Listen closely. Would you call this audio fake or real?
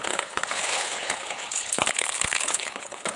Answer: fake